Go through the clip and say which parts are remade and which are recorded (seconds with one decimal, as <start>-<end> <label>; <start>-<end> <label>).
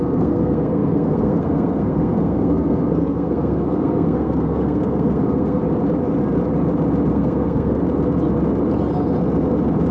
0.0-5.6 remade; 5.6-7.1 recorded; 7.1-7.8 remade; 7.8-9.9 recorded